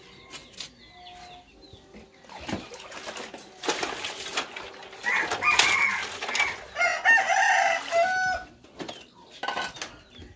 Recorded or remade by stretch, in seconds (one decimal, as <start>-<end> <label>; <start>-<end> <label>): 0.0-10.4 recorded